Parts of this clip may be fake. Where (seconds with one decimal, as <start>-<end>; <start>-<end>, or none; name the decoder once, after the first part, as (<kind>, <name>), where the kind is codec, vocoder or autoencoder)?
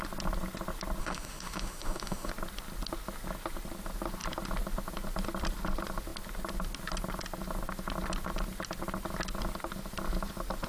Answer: 1.0-2.3 (autoencoder, DAC-VAE)